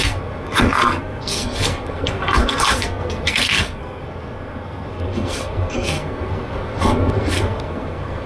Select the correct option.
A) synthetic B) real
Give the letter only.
A